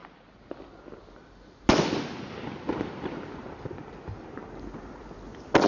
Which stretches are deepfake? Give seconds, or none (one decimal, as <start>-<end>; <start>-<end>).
none